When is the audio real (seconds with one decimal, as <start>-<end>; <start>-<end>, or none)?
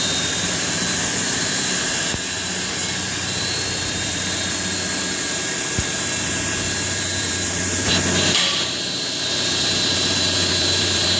none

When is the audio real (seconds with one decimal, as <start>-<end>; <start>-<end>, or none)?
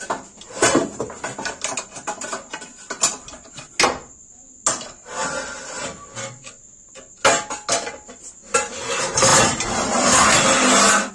0.0-11.1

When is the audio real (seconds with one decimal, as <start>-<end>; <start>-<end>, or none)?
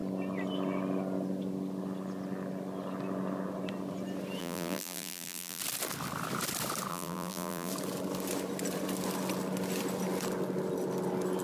0.0-4.4; 5.6-6.9; 7.7-11.4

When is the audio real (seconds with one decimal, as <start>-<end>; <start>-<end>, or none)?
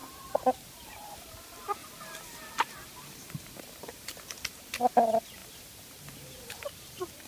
0.0-0.7; 1.8-3.0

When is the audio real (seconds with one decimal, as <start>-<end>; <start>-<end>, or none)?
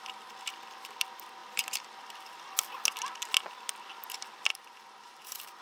0.0-4.5